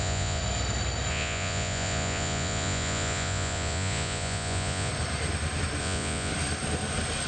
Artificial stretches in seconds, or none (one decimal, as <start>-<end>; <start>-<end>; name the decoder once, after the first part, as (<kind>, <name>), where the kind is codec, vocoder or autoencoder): 0.0-0.4 (vocoder, Vocos); 1.1-4.9; 5.8-6.3